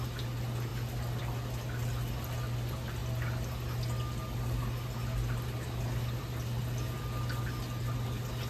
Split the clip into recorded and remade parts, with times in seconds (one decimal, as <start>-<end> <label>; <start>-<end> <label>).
0.0-8.5 recorded